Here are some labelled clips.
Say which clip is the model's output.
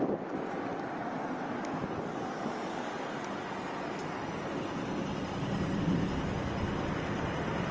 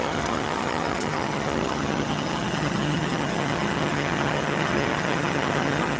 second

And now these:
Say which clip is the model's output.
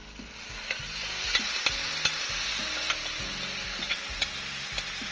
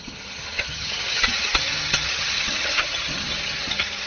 second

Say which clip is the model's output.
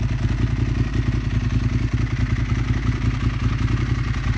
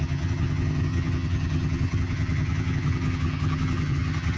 second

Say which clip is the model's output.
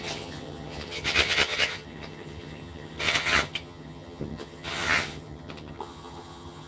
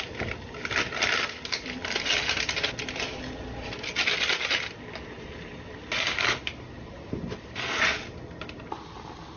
first